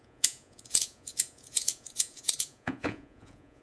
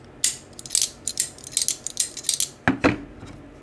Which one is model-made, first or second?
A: first